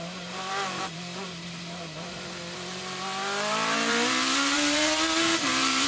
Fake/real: fake